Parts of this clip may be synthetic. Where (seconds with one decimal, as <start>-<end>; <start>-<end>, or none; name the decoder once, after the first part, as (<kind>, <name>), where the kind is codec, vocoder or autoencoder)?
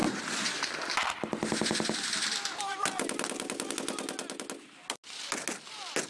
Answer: none